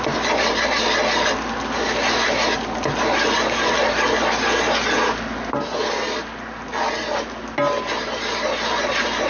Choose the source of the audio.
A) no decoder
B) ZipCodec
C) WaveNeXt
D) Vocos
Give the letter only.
A